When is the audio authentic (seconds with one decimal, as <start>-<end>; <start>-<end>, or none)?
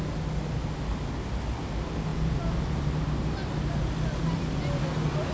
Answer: 0.0-5.3